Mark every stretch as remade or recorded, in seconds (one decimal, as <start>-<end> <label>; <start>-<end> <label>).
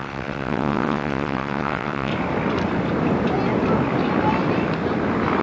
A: 0.0-2.1 remade; 2.1-5.4 recorded